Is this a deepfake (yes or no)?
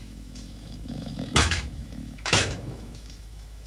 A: yes